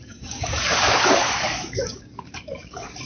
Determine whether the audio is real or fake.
fake